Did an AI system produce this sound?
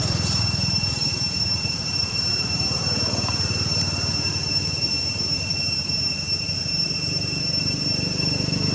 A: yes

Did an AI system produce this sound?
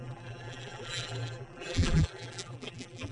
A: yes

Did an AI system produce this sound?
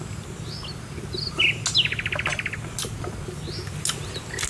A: no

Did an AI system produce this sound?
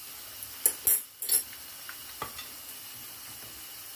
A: no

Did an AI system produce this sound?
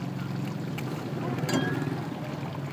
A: no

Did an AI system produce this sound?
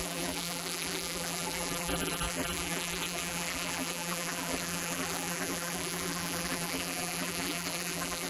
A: yes